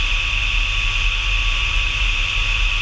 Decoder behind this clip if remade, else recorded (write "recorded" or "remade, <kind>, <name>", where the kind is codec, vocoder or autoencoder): recorded